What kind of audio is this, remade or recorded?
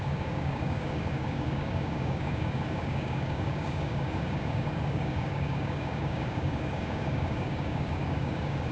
remade